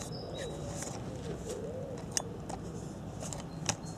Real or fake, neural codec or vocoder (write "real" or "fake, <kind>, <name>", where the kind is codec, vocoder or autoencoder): real